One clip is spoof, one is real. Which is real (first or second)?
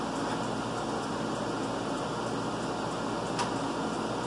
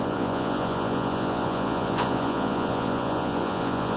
first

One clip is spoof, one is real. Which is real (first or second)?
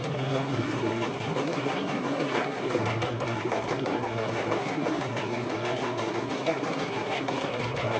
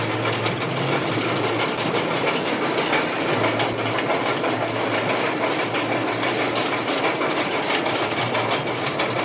second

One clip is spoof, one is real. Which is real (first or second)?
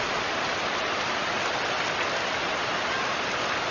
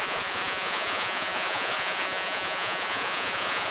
first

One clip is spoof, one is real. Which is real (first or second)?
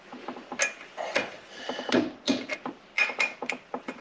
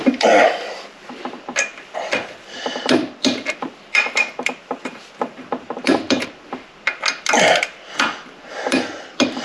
first